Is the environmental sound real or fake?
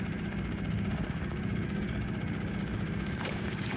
fake